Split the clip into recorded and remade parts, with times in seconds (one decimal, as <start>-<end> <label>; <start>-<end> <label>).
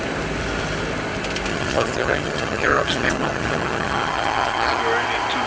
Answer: 0.0-1.5 recorded; 1.5-4.8 remade; 4.8-5.5 recorded